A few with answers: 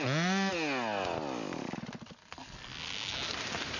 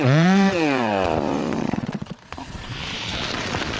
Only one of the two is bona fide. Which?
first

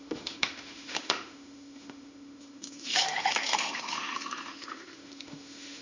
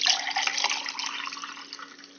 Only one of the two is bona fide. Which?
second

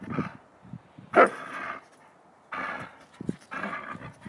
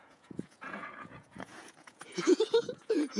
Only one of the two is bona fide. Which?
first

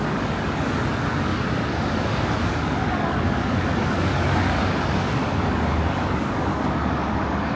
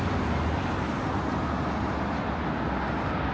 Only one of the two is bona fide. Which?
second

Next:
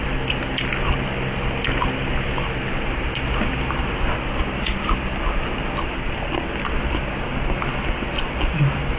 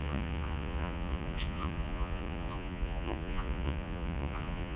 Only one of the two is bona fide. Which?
first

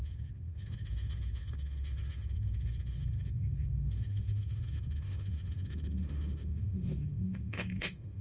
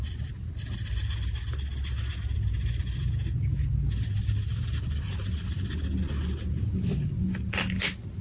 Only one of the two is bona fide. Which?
second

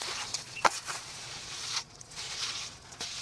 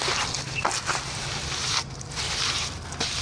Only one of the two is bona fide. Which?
second